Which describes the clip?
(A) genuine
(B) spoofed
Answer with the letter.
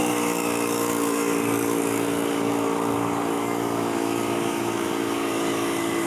B